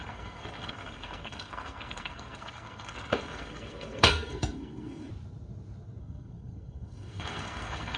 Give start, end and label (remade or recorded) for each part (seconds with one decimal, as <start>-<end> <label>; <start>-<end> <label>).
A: 0.0-5.1 remade; 5.1-6.0 recorded; 6.0-8.0 remade